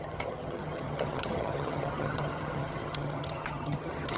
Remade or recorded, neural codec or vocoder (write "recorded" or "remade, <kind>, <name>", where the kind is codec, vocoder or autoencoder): remade, vocoder, HiFi-GAN